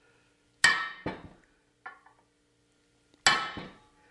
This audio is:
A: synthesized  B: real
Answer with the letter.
B